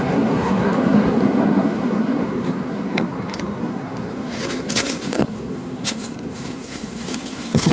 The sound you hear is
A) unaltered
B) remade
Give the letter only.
B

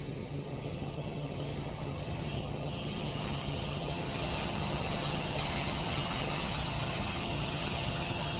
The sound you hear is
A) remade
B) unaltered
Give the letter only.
A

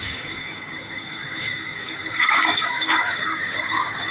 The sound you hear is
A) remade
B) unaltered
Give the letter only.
A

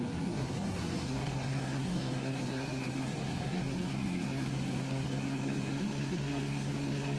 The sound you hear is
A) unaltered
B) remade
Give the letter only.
B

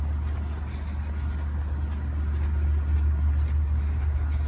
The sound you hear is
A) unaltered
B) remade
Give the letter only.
A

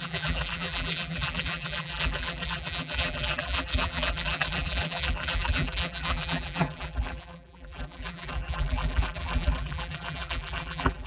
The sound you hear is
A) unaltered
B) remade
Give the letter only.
B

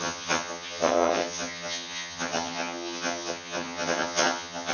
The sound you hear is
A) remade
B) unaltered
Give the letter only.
A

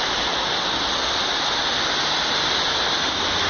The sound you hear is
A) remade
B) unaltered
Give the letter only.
B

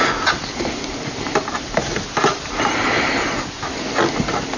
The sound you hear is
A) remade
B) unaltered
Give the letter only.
B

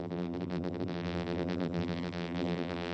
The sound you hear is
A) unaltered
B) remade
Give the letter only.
B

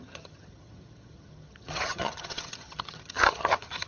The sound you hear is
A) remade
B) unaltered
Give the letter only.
A